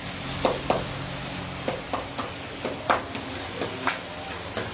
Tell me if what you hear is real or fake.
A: real